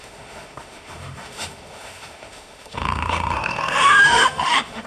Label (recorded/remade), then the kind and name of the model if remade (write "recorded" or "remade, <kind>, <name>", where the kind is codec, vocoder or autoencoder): remade, autoencoder, DAC-VAE